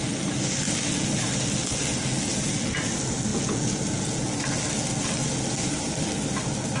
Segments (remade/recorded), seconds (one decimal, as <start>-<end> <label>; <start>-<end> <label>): 0.0-3.3 recorded; 3.3-4.4 remade; 4.4-6.8 recorded